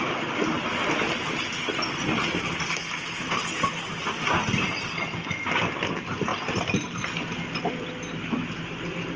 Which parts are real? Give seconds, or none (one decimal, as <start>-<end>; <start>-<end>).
0.0-9.2